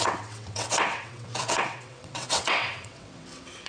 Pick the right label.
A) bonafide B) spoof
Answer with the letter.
B